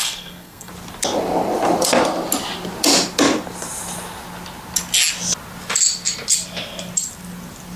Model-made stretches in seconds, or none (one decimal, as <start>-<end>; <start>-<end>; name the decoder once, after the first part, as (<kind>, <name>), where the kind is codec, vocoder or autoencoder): 0.0-0.7 (codec, SNAC)